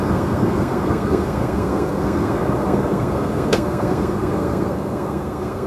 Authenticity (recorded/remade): remade